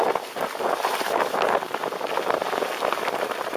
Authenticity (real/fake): real